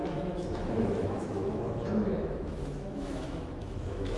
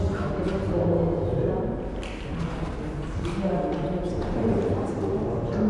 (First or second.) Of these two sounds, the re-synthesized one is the first